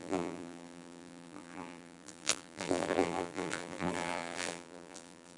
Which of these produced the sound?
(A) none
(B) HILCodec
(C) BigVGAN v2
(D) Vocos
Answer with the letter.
C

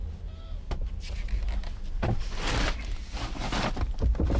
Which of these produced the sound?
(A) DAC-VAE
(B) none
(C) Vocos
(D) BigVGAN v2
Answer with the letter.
B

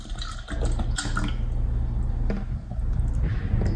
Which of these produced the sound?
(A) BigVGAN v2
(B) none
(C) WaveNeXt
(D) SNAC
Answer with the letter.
B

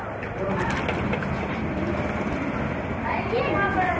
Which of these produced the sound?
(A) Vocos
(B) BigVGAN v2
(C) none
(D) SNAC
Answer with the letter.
C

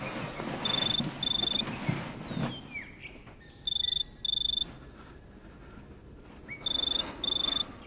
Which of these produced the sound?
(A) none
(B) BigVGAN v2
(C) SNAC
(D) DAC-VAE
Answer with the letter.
A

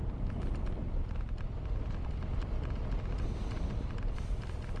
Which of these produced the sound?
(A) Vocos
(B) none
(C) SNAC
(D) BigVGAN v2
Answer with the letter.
B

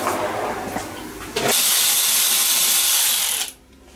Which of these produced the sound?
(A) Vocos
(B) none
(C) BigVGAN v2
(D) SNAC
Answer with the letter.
B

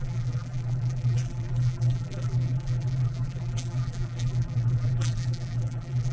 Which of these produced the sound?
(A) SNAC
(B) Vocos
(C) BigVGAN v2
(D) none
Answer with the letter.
C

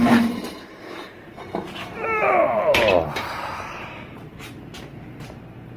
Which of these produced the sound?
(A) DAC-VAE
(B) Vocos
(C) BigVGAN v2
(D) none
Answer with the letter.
C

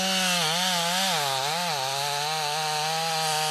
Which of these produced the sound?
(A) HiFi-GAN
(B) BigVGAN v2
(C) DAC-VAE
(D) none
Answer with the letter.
D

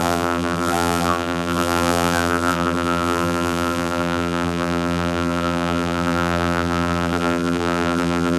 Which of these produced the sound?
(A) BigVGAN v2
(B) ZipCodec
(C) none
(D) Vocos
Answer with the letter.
A